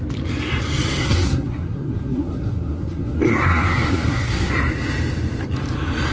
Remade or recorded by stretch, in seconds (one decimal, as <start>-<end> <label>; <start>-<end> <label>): 0.0-1.0 recorded; 1.0-4.5 remade; 4.5-6.1 recorded